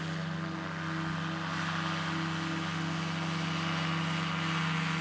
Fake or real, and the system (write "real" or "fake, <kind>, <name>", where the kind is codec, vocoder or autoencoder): real